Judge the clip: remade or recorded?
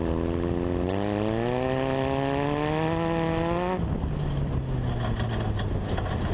recorded